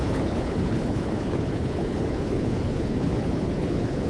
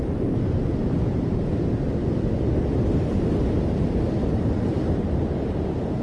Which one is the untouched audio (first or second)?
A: second